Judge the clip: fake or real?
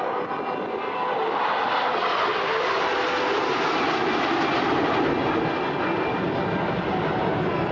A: real